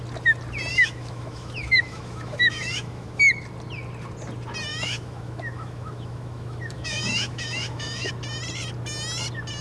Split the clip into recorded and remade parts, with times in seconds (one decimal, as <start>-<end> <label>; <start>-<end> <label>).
0.0-0.7 recorded; 0.7-3.3 remade; 3.3-4.7 recorded; 4.7-8.1 remade; 8.1-9.6 recorded